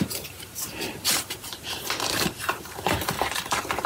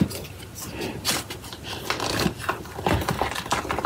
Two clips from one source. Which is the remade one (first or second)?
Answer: first